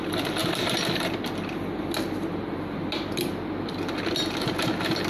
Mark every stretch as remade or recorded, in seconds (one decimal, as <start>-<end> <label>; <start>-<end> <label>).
0.0-5.1 recorded